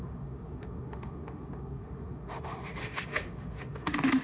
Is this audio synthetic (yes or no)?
yes